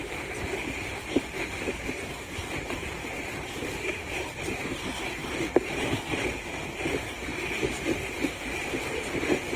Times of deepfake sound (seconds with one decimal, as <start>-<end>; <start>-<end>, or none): 0.0-7.3; 8.1-9.6